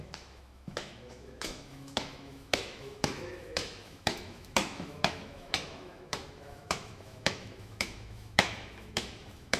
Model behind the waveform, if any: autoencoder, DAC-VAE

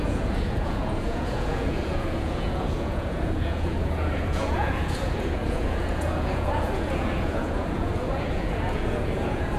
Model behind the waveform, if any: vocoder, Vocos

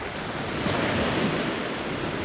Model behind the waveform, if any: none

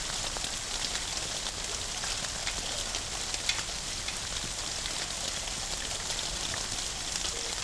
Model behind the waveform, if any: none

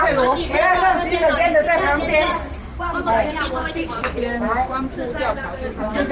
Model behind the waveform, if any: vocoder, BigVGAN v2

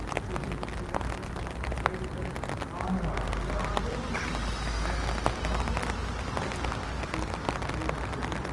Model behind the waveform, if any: none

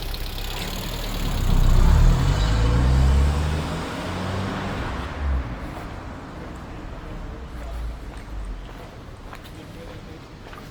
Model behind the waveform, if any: none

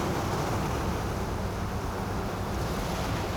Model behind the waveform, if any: none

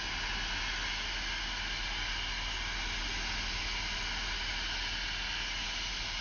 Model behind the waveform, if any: none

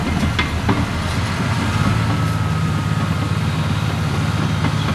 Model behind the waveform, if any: none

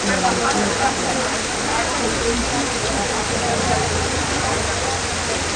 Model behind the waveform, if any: none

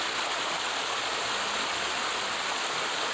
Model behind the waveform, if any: none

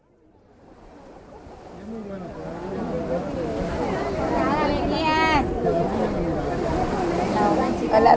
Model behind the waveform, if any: none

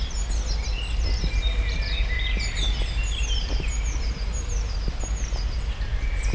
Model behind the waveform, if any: none